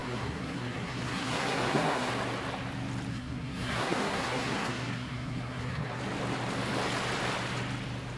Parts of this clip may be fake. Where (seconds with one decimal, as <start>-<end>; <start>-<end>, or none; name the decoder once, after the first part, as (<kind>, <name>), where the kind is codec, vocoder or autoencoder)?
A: 0.0-2.1 (codec, SNAC); 3.1-6.0